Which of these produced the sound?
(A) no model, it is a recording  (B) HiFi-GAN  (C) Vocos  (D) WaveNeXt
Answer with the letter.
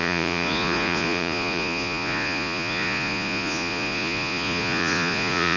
C